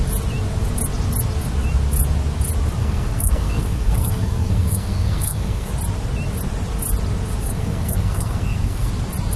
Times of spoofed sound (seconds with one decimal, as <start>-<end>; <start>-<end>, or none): 2.8-5.7; 7.4-8.9